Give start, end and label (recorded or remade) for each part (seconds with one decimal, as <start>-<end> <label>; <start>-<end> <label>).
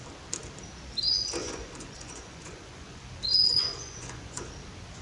0.0-1.4 recorded; 1.4-3.0 remade; 3.0-3.5 recorded; 3.5-4.5 remade; 4.5-5.0 recorded